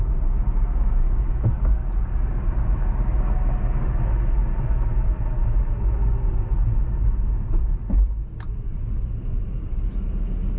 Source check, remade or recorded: recorded